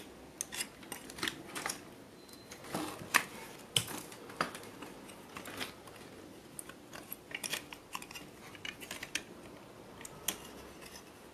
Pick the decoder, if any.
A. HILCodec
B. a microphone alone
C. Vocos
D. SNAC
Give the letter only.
B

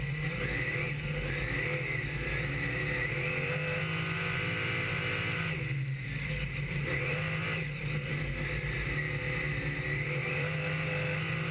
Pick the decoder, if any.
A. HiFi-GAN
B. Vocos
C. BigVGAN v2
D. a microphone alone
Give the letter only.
D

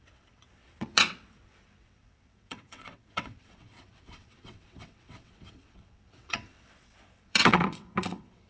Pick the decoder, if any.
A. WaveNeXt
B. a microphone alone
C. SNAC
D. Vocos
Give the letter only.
A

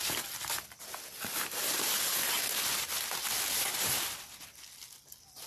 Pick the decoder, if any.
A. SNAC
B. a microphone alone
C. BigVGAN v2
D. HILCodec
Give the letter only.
B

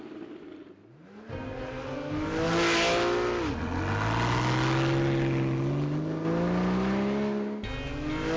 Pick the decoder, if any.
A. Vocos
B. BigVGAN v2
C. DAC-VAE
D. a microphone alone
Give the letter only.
D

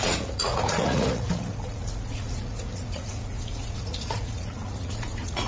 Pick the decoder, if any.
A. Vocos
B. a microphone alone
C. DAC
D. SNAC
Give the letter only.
A